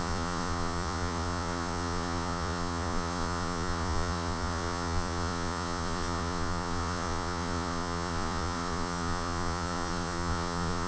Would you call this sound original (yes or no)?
no